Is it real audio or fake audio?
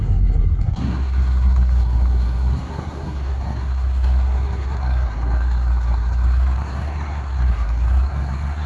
fake